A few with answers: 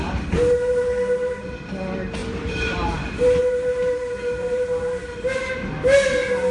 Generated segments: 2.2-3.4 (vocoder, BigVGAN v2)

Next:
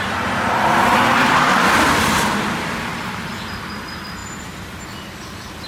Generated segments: none